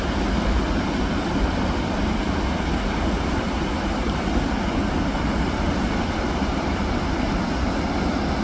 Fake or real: real